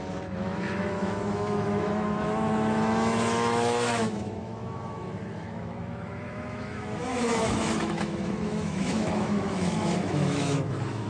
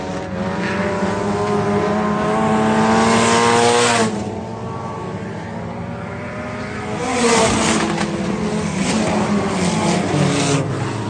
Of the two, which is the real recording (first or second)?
second